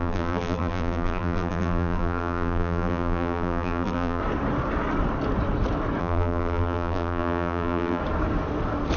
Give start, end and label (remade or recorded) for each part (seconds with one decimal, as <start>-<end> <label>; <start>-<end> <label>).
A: 0.0-4.2 remade; 4.2-6.0 recorded; 6.0-8.0 remade; 8.0-9.0 recorded